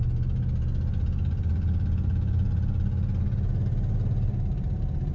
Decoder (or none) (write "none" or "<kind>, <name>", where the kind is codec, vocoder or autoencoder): none